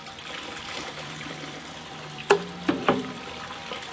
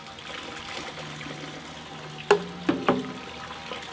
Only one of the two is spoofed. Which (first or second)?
first